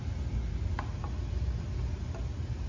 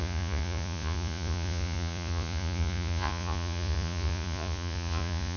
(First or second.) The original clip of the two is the first